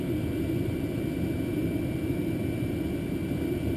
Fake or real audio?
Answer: real